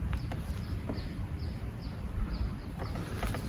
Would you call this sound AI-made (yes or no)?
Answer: yes